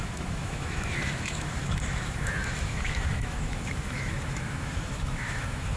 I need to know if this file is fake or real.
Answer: fake